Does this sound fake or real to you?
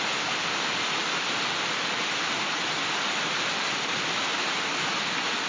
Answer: real